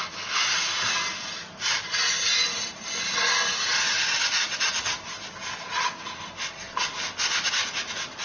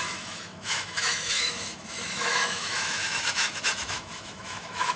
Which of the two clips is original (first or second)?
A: first